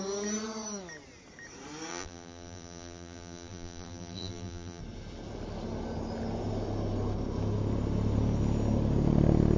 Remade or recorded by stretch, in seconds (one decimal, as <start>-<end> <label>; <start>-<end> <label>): 0.0-1.9 recorded; 1.9-4.8 remade; 4.8-9.6 recorded